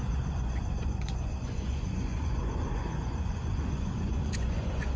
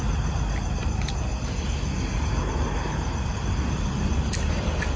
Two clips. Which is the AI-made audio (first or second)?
first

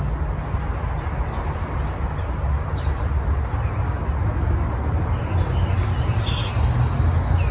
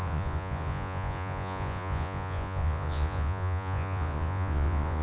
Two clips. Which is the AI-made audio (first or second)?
second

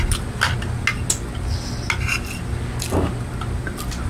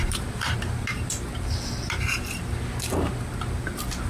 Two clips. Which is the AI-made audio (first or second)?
second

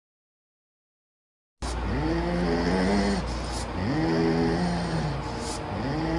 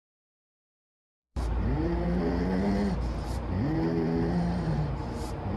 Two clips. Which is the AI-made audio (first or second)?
second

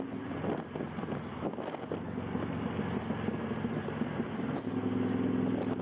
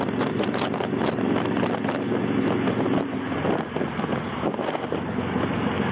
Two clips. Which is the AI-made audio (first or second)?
second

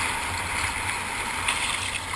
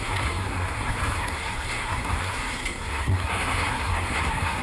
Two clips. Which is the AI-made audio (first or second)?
second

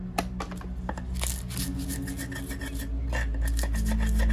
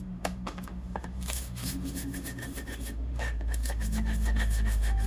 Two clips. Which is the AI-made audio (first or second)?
second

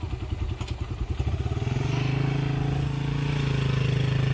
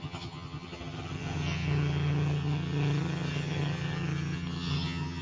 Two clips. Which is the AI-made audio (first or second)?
second